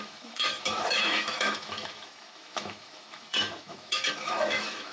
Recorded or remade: remade